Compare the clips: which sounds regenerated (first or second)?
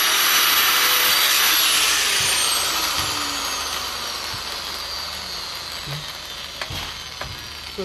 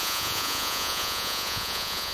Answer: second